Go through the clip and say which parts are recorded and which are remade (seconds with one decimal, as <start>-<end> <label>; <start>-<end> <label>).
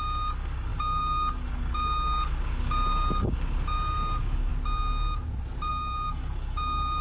0.0-4.5 remade; 4.5-5.7 recorded; 5.7-7.0 remade